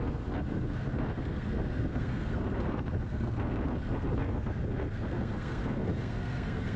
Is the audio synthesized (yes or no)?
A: yes